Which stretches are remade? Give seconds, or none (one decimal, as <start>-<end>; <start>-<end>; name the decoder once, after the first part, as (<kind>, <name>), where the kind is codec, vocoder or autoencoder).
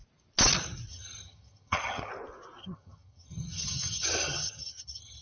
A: 0.9-2.1 (vocoder, HiFi-GAN); 2.6-5.2